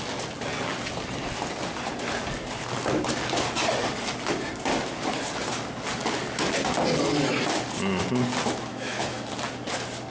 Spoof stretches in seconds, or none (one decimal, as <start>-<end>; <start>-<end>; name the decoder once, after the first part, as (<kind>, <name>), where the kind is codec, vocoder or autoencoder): 8.7-9.3 (autoencoder, DAC-VAE)